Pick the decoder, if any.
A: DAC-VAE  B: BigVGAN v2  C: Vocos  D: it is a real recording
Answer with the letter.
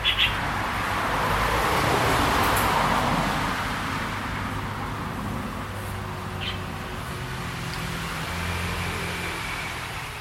D